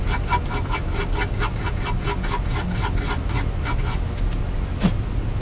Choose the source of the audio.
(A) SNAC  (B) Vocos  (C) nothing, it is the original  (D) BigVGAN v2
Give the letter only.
C